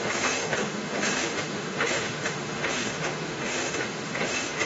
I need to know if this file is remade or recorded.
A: remade